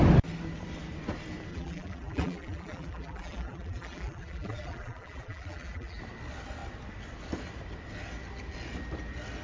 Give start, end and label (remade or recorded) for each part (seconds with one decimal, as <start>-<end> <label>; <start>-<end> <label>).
0.0-1.5 recorded; 1.5-6.0 remade; 6.0-9.4 recorded